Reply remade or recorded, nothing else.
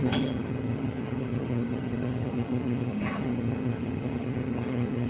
remade